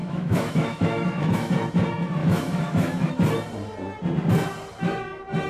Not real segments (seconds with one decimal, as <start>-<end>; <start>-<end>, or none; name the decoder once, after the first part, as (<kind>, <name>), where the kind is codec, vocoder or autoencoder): 0.0-1.5 (autoencoder, DAC-VAE); 2.2-3.1

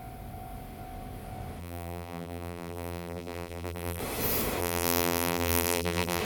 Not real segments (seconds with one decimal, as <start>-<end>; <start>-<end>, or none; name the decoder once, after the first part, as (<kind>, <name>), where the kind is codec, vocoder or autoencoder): 1.6-4.0 (vocoder, BigVGAN v2); 4.6-6.2

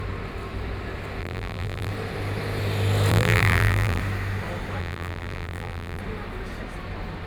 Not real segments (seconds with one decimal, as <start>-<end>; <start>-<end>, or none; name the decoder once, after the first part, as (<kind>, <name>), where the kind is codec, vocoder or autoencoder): 1.2-1.9 (vocoder, BigVGAN v2); 3.1-4.0; 4.8-6.0